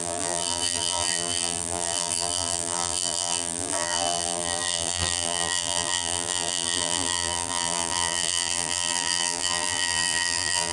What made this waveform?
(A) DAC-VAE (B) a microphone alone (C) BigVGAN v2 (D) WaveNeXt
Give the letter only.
C